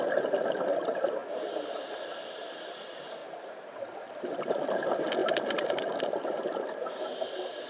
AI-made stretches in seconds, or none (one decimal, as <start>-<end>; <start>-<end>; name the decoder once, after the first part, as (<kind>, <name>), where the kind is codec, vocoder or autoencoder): 1.2-1.7 (vocoder, BigVGAN v2); 3.2-4.8